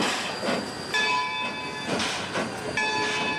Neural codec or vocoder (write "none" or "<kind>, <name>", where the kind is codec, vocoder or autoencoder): none